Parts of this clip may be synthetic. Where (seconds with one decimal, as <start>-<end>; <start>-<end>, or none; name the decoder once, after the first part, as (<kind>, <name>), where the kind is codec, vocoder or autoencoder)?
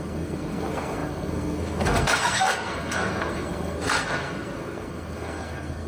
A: 0.0-5.9 (codec, SNAC)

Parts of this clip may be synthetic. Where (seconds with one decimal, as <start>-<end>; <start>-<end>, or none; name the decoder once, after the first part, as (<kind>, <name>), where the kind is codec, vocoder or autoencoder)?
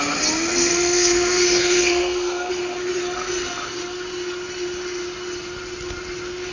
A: 0.7-2.5 (codec, SNAC)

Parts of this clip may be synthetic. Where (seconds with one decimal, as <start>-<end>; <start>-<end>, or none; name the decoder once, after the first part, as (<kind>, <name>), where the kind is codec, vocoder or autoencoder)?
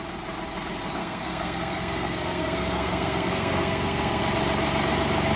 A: 1.0-4.2 (codec, SNAC)